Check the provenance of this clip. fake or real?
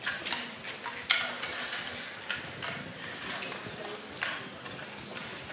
real